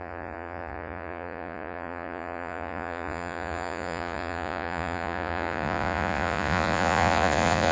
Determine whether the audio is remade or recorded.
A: remade